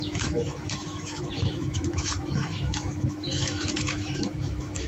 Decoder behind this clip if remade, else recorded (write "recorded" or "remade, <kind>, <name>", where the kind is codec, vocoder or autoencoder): remade, autoencoder, DAC-VAE